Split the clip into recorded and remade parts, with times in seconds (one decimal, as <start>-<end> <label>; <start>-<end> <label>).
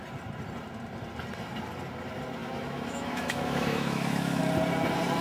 0.0-2.4 recorded; 2.4-4.4 remade; 4.4-5.2 recorded